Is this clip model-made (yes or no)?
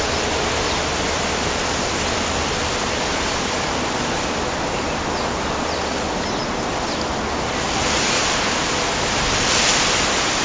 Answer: no